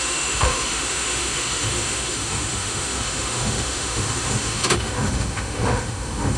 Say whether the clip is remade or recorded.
remade